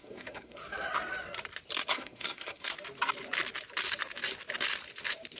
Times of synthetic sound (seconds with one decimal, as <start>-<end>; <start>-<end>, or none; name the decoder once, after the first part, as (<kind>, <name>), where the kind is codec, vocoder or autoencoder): 0.0-0.6 (codec, SNAC); 1.9-2.7